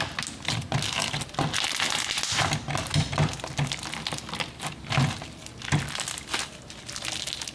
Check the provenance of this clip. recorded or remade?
recorded